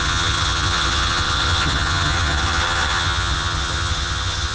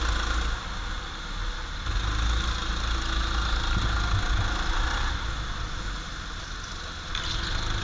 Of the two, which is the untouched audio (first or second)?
second